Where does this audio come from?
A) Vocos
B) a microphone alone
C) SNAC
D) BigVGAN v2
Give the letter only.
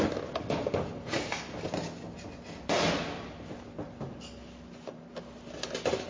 B